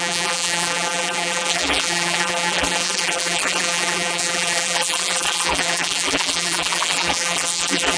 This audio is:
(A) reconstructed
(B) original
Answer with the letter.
A